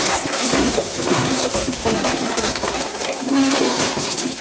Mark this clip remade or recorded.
remade